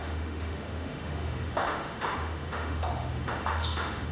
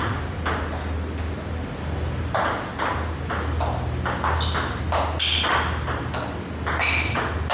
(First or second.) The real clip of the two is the second